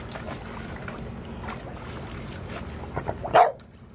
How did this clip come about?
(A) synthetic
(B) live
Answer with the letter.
B